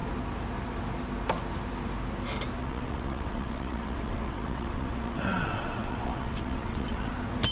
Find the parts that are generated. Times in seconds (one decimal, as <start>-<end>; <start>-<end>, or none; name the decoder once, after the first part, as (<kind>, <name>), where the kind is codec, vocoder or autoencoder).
2.6-7.1 (vocoder, WaveNeXt)